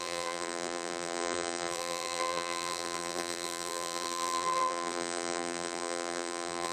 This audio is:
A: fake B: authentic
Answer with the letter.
A